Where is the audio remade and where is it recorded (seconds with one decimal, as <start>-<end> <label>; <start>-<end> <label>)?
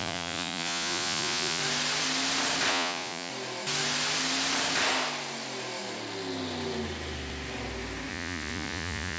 0.0-1.6 remade; 1.6-2.7 recorded; 2.7-3.3 remade; 3.3-8.1 recorded; 8.1-9.2 remade